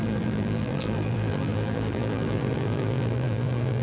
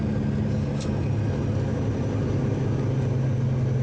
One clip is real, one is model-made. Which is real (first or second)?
second